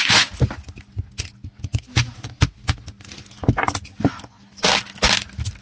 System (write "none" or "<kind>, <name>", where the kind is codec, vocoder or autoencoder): none